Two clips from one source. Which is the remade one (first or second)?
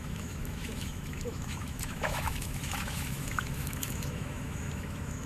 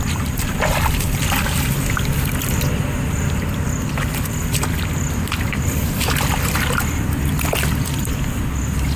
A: first